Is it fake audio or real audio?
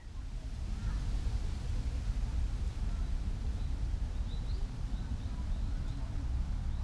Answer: real